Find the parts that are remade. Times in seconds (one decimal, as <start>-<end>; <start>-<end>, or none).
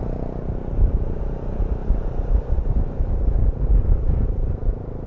0.6-1.2; 1.8-2.6; 3.4-5.1